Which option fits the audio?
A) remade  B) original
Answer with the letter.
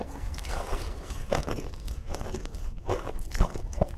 A